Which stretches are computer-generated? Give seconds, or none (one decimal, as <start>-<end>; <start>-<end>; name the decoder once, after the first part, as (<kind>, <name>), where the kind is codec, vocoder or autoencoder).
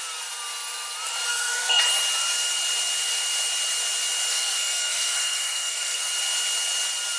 1.3-1.8 (codec, SNAC); 4.3-6.1